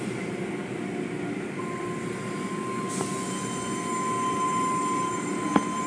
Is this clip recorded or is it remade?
recorded